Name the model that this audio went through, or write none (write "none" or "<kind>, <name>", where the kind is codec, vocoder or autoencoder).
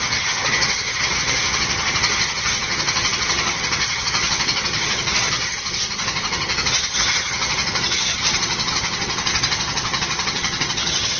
vocoder, HiFi-GAN